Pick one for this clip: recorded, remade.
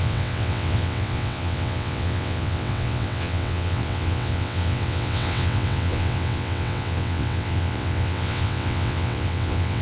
remade